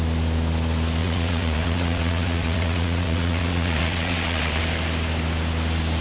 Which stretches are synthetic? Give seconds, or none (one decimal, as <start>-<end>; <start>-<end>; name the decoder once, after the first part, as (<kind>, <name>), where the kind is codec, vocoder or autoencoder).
1.0-4.6 (vocoder, WaveNeXt)